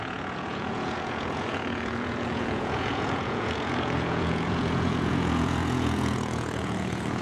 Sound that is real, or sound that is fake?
fake